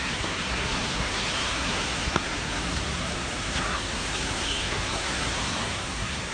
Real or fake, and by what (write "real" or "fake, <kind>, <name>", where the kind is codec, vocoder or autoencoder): fake, codec, SNAC